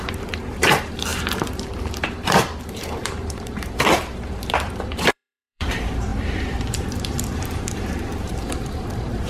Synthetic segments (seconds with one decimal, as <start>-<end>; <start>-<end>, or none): 0.0-9.3